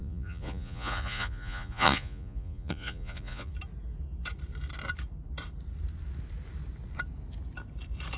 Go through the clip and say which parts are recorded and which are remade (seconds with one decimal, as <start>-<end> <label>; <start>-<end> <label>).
0.0-3.5 remade; 3.5-8.2 recorded